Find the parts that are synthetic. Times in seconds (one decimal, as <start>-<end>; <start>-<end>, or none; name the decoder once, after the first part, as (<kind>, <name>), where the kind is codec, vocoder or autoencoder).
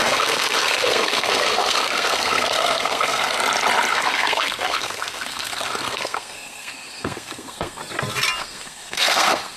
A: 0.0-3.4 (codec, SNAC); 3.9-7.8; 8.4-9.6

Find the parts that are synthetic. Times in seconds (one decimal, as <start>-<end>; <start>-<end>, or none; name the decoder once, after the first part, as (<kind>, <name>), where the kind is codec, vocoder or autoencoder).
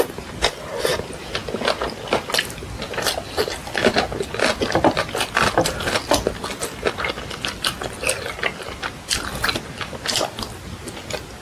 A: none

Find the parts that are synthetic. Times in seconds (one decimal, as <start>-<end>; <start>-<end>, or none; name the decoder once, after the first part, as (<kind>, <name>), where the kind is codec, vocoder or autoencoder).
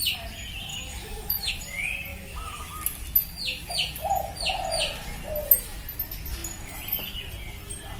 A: 0.7-1.5 (autoencoder, DAC-VAE); 2.1-2.6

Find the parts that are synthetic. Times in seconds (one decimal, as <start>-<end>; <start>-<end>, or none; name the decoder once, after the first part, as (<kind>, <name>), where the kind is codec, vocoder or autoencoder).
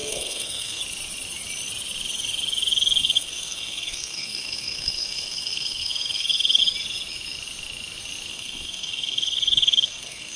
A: 0.0-0.8 (codec, SNAC); 3.0-6.6; 8.3-10.4